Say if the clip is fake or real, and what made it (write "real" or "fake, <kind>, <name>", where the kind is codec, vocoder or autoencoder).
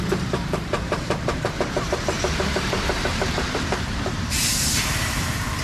fake, vocoder, BigVGAN v2